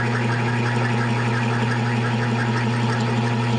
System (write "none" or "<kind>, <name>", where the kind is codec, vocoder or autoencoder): none